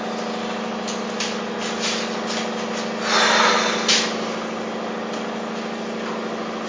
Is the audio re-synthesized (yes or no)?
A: no